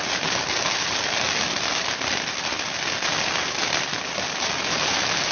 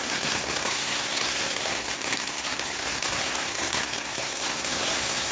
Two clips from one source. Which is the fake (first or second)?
second